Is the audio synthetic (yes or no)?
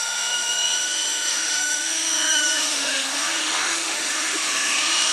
yes